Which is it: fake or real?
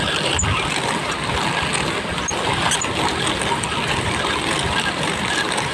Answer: real